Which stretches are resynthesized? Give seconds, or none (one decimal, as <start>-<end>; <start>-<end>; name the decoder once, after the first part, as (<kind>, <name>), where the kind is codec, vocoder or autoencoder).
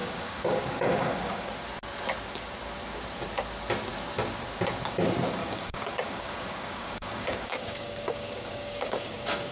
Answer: 0.0-1.5 (codec, DAC); 5.4-9.5